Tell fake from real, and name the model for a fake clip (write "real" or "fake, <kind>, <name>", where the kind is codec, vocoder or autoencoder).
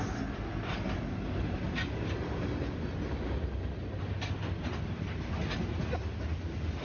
real